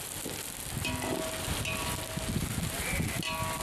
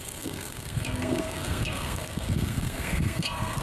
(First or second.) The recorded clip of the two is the first